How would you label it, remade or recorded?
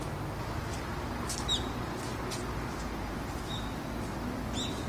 recorded